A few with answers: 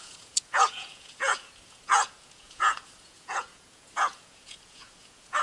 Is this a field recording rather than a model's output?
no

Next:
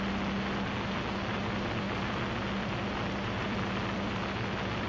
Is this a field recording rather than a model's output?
yes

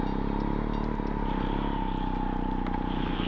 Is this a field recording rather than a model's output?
yes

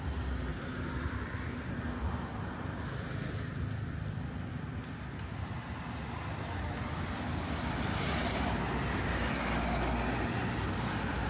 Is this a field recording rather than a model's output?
yes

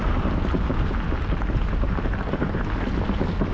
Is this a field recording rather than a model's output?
yes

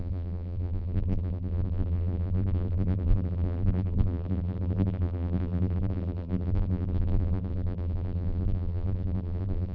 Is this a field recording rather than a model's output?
no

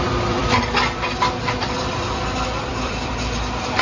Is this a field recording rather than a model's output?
no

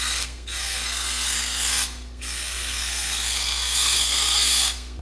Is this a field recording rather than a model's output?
no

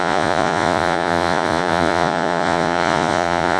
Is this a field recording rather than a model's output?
no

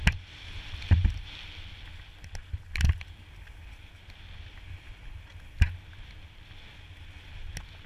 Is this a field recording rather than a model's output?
yes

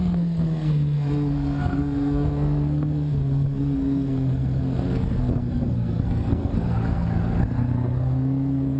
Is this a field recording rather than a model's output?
no